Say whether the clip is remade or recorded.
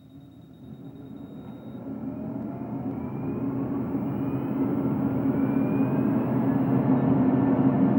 recorded